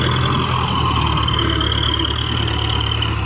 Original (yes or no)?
yes